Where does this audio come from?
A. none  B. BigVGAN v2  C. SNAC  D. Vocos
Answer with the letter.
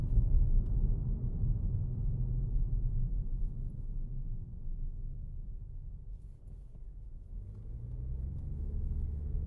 A